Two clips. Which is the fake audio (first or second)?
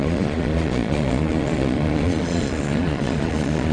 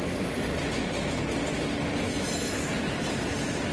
first